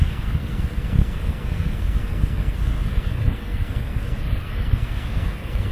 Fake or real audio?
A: fake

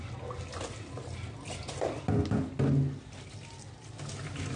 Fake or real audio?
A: real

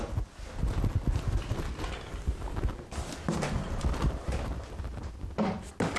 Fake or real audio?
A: real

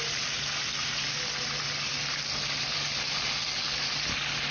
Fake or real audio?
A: real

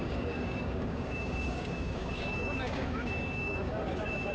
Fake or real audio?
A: fake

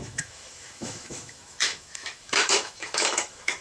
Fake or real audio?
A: fake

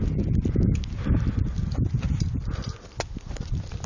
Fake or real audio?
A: real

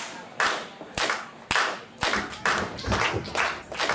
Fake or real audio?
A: real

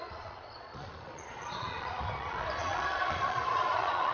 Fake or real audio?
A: fake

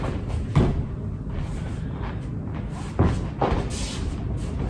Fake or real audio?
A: real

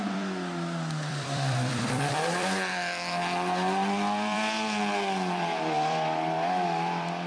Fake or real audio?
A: fake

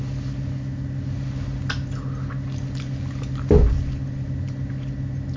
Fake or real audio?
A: real